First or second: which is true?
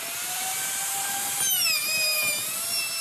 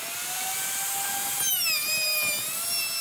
second